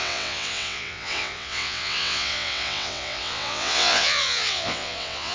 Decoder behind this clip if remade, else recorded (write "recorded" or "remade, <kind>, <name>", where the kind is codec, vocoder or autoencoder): remade, vocoder, WaveNeXt